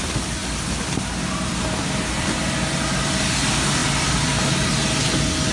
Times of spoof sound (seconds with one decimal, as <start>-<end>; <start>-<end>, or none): none